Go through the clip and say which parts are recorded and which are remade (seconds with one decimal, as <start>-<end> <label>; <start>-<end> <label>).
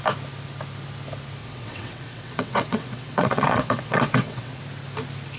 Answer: 0.0-1.4 recorded; 1.4-4.6 remade; 4.6-5.4 recorded